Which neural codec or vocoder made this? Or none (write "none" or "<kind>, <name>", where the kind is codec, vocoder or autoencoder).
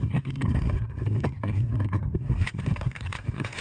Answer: codec, SNAC